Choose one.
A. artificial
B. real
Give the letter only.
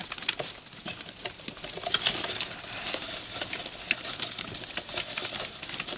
B